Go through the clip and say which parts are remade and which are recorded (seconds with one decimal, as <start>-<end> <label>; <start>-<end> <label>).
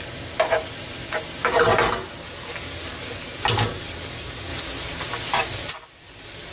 0.0-6.5 recorded